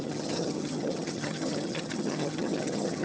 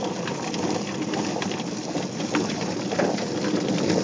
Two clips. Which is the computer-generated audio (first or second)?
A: first